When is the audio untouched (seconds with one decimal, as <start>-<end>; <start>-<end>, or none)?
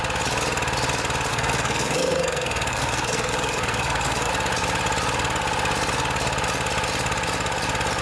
0.0-1.3; 4.3-8.0